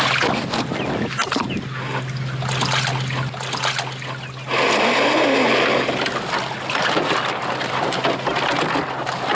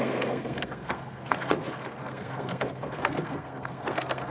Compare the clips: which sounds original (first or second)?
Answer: first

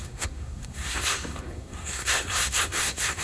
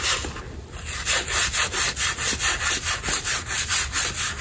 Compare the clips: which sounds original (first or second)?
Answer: second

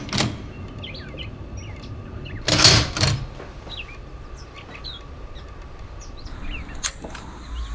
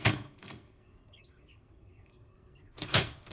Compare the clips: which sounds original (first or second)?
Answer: first